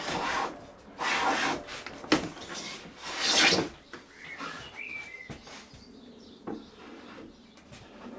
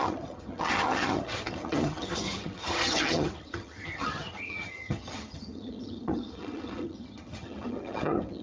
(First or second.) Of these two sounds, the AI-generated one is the second